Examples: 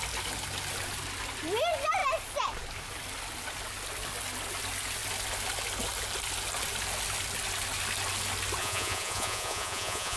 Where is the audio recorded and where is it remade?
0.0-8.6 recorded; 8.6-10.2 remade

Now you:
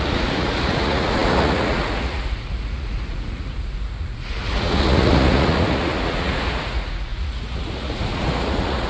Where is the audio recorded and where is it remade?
0.0-8.9 remade

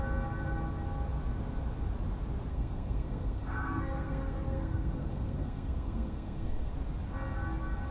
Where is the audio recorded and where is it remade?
0.0-2.5 recorded; 2.5-6.7 remade; 6.7-7.9 recorded